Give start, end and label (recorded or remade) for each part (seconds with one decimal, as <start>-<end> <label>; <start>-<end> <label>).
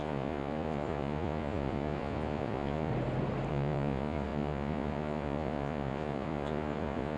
0.0-2.9 remade; 2.9-3.5 recorded; 3.5-7.2 remade